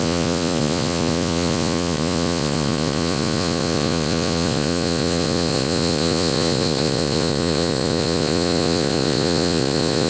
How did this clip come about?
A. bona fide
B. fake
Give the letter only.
B